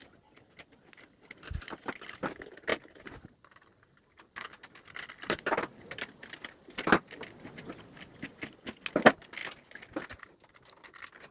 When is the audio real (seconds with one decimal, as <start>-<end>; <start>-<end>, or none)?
0.0-2.7; 7.8-9.4; 10.0-11.3